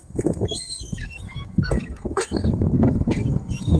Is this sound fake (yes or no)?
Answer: yes